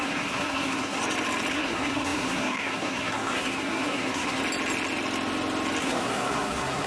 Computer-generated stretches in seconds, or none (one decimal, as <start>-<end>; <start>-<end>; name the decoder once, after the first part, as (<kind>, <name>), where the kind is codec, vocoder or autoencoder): 0.0-1.0 (codec, SNAC); 1.5-4.4; 5.8-6.9